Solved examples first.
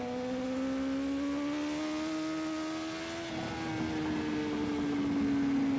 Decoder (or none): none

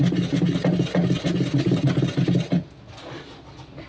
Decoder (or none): none